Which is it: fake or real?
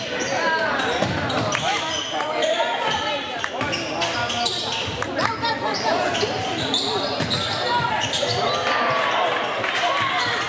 real